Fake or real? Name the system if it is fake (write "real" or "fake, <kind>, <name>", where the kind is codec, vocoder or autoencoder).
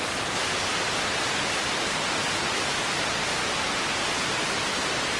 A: real